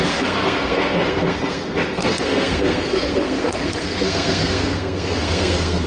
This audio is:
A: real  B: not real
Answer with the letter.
B